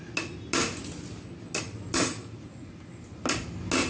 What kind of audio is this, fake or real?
real